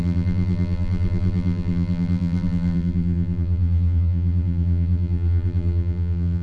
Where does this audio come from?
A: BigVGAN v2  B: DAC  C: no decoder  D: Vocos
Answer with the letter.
A